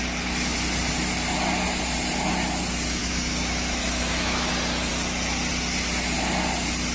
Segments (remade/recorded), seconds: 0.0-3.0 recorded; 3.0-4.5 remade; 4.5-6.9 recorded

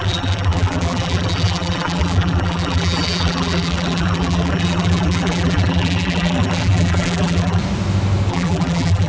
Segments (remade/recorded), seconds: 0.0-7.6 remade; 7.6-8.3 recorded; 8.3-9.1 remade

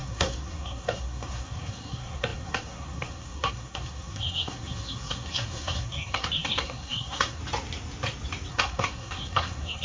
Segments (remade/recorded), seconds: 0.0-7.4 remade; 7.4-8.5 recorded; 8.5-9.8 remade

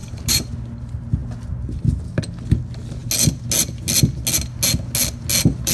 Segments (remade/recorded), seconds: 0.0-0.5 remade; 0.5-1.2 recorded; 1.2-2.2 remade; 2.2-5.7 recorded

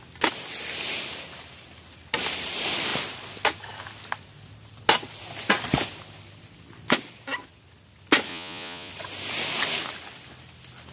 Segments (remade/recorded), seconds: 0.0-8.3 recorded; 8.3-8.9 remade; 8.9-10.9 recorded